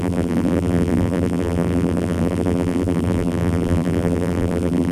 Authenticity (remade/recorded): remade